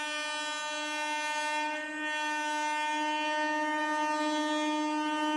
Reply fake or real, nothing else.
real